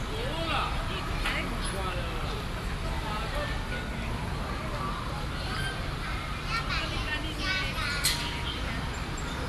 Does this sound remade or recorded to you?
recorded